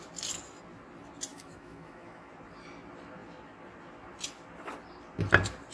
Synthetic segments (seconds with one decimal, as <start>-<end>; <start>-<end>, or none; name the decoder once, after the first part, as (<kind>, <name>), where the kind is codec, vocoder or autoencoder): 1.3-2.3 (autoencoder, DAC-VAE)